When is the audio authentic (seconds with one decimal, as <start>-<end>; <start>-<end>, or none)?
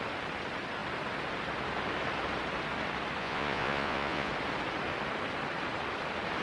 0.0-3.2; 4.3-6.4